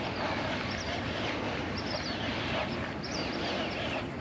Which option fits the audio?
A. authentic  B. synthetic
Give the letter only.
A